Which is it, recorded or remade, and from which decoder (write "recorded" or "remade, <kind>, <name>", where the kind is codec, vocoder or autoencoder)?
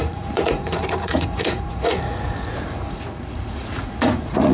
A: remade, vocoder, Vocos